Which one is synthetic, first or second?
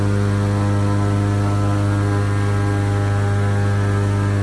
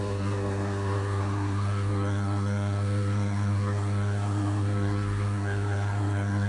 second